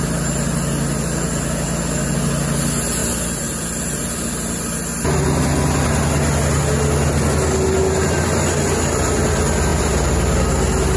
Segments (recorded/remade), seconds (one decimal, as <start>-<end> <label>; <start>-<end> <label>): 0.0-3.0 recorded; 3.0-4.6 remade; 4.6-9.7 recorded; 9.7-10.4 remade; 10.4-11.0 recorded